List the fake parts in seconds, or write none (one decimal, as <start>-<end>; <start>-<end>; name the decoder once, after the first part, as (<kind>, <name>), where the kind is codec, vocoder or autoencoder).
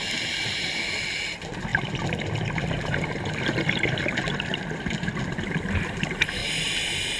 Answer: none